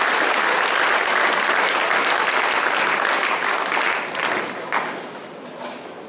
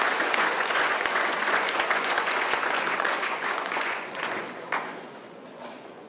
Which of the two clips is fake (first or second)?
second